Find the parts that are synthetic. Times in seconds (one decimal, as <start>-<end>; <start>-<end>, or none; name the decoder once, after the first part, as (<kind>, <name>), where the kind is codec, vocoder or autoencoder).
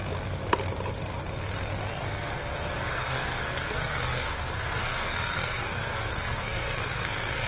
1.9-7.5 (codec, SNAC)